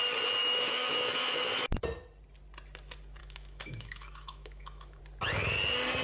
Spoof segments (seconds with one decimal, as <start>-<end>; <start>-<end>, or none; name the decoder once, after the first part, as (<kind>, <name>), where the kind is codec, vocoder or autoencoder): 0.4-1.5 (autoencoder, DAC-VAE); 3.2-5.0